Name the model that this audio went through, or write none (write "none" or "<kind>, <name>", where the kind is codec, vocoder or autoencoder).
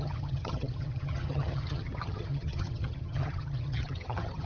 vocoder, HiFi-GAN